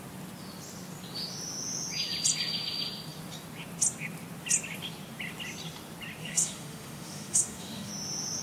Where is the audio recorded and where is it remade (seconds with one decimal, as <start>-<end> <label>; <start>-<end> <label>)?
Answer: 0.0-6.2 recorded; 6.2-7.9 remade; 7.9-8.4 recorded